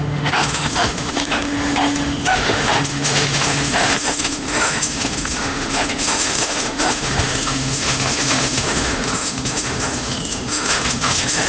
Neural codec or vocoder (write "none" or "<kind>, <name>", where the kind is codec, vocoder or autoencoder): autoencoder, DAC-VAE